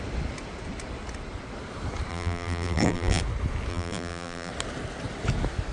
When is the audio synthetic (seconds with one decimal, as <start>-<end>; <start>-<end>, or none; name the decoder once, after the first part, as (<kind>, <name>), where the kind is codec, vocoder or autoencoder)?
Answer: 2.1-3.2 (vocoder, BigVGAN v2); 3.7-4.5